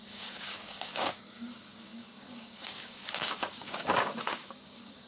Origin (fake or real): fake